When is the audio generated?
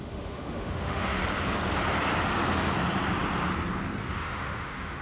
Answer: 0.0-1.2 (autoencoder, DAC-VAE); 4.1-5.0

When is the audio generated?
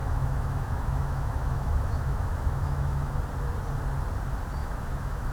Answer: 0.0-3.2 (autoencoder, DAC-VAE); 4.6-5.3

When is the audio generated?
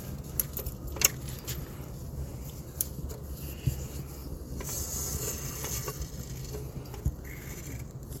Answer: none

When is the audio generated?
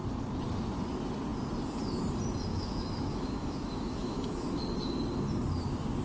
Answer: 2.5-4.6 (autoencoder, DAC-VAE)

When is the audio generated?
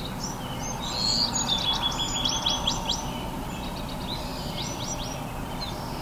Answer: none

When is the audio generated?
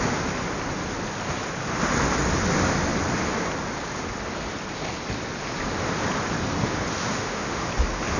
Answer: 7.0-7.7 (autoencoder, DAC-VAE)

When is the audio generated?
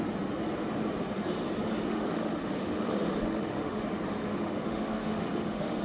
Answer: 1.9-3.8 (autoencoder, DAC-VAE); 4.2-5.8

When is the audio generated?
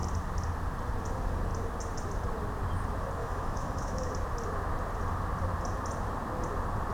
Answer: 3.2-4.1 (autoencoder, DAC-VAE)